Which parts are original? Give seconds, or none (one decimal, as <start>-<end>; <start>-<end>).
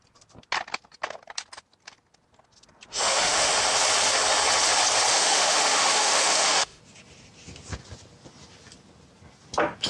0.0-2.9; 3.5-5.1; 6.8-9.9